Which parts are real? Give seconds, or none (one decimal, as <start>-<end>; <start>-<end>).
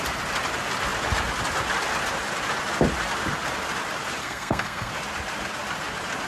0.0-4.2; 4.9-6.3